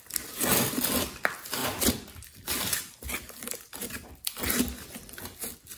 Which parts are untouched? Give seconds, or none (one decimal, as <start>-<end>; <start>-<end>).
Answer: 0.0-1.6; 4.4-5.8